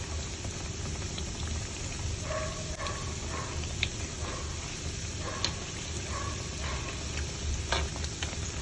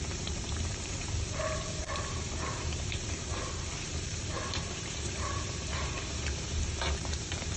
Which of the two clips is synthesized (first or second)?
second